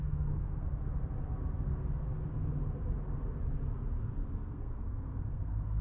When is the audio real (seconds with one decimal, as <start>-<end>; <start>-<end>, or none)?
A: 0.8-4.3